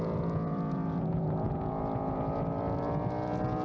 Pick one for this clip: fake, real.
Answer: fake